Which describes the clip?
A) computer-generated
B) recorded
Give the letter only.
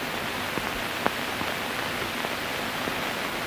B